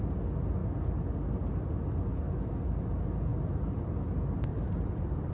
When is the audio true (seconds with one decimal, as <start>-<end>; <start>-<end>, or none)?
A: 0.0-3.3; 3.9-4.5